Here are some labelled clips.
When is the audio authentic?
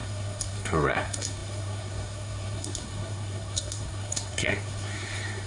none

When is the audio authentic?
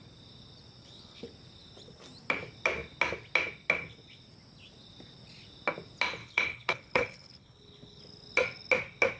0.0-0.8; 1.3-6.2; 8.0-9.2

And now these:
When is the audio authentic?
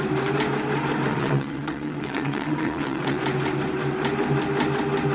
0.0-1.1; 3.2-5.1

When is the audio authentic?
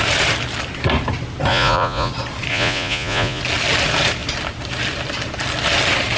0.0-1.5; 2.1-2.5; 3.4-6.2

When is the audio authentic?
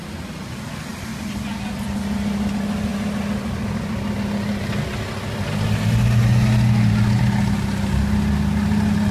0.0-9.1